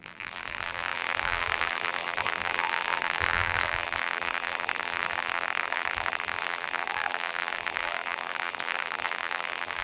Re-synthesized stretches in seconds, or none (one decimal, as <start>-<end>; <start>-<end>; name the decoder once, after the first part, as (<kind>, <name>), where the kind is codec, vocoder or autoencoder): 0.0-9.8 (vocoder, BigVGAN v2)